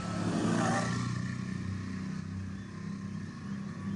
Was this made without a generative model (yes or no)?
yes